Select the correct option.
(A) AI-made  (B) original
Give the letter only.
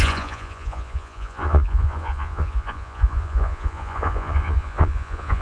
A